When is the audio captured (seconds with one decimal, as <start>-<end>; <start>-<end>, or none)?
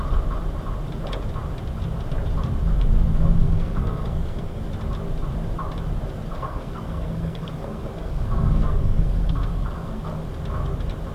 0.0-3.4; 4.6-6.3; 10.2-11.1